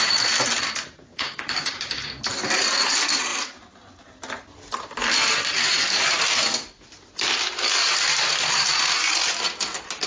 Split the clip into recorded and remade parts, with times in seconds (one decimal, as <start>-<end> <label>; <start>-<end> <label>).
0.0-1.1 recorded; 1.1-2.2 remade; 2.2-10.1 recorded